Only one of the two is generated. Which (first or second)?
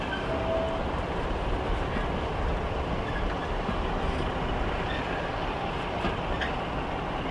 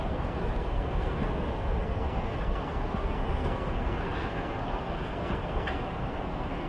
second